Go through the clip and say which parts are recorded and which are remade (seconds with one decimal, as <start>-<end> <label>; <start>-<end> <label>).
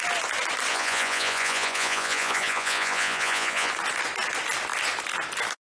0.0-0.7 recorded; 0.7-3.7 remade; 3.7-5.6 recorded